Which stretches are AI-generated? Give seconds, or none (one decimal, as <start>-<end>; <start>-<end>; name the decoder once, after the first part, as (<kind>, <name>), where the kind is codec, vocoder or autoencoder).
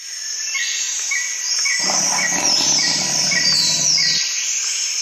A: 1.7-3.8 (vocoder, BigVGAN v2)